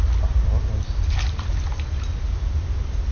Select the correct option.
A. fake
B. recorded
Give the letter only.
B